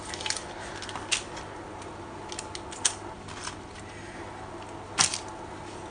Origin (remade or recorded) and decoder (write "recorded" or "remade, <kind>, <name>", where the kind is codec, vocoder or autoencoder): recorded